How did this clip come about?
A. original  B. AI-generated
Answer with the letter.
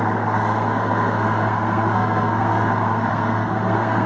B